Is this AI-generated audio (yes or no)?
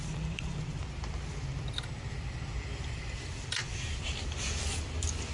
yes